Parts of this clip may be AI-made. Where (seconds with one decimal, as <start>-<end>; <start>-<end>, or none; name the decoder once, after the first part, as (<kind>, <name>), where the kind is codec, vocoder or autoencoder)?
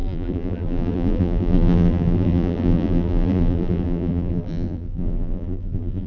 0.0-6.1 (vocoder, BigVGAN v2)